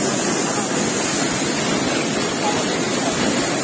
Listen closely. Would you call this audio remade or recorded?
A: recorded